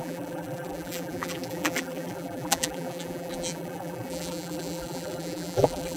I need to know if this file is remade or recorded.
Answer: remade